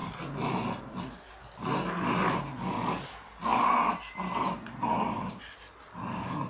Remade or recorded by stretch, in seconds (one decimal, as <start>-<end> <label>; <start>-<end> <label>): 0.0-6.5 recorded